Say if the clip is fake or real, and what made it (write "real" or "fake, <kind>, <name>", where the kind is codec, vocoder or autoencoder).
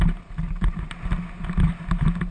real